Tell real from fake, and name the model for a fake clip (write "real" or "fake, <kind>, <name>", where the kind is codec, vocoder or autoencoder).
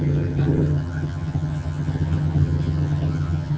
fake, vocoder, HiFi-GAN